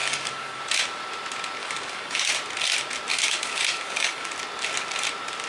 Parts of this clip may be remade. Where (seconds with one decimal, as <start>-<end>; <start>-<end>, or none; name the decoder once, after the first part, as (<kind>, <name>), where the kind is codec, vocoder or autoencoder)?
0.0-0.6 (codec, DAC); 1.6-2.3; 3.1-4.3

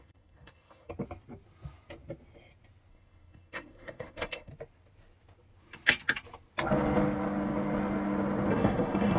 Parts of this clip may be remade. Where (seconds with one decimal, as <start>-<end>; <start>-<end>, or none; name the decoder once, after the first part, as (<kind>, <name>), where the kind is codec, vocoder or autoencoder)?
0.0-0.9 (codec, SNAC); 2.9-4.5; 8.5-9.2

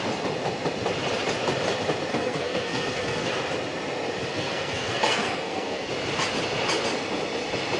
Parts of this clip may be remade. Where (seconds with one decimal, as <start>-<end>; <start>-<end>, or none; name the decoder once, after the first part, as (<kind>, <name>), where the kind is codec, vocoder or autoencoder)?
2.1-3.3 (codec, SNAC); 4.3-5.9

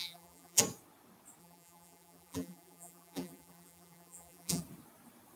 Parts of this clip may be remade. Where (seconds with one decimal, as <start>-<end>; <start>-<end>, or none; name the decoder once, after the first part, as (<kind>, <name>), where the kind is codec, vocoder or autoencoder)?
0.0-0.6 (vocoder, BigVGAN v2); 1.4-4.6

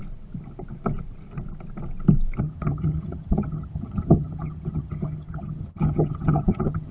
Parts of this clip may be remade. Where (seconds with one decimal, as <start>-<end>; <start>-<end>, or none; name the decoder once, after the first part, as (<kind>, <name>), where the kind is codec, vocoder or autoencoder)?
2.4-6.9 (vocoder, HiFi-GAN)

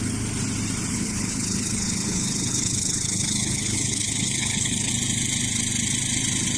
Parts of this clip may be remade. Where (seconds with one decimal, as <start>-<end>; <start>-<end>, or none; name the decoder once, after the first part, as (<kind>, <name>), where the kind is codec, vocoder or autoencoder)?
0.9-4.9 (codec, HILCodec)

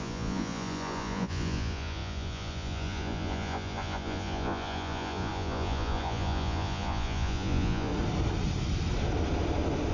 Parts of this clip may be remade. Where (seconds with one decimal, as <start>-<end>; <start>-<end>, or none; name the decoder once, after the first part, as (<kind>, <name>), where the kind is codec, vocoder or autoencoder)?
0.0-7.9 (vocoder, Vocos)